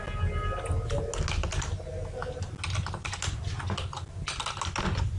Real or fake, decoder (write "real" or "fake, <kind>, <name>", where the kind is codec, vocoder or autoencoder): real